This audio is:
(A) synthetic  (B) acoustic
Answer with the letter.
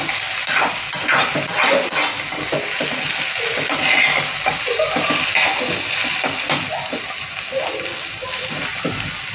B